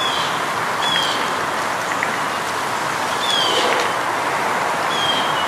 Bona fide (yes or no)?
yes